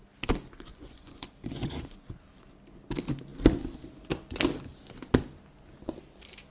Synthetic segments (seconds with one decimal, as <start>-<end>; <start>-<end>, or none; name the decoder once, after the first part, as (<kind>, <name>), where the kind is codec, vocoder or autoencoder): 0.7-2.0 (vocoder, Vocos)